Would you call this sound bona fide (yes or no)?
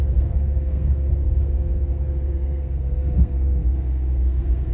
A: no